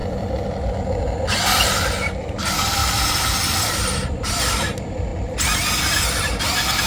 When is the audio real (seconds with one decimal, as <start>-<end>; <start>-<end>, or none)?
0.0-1.6; 5.1-6.4